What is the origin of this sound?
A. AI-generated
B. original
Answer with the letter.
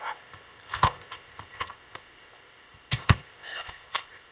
A